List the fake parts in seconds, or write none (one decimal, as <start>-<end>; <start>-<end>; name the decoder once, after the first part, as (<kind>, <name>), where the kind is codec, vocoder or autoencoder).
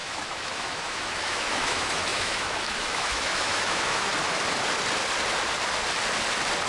0.0-4.1 (autoencoder, DAC-VAE)